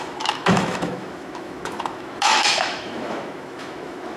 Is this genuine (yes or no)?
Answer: no